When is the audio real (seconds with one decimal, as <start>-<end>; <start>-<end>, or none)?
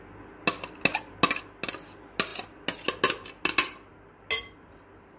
0.0-5.2